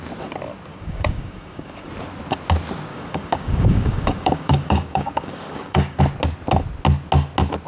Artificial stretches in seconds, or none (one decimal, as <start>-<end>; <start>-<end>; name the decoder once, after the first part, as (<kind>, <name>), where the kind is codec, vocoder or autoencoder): 0.7-1.9 (codec, DAC); 2.9-6.0